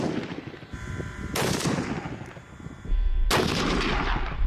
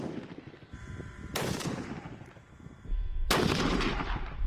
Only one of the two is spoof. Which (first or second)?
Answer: second